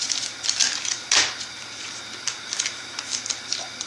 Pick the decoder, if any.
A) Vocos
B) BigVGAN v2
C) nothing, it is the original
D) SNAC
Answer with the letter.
C